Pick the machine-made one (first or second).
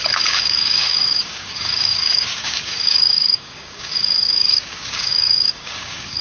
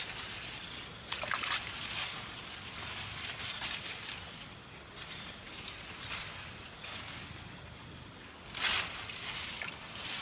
first